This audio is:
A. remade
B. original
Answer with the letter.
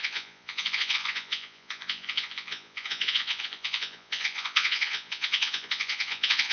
A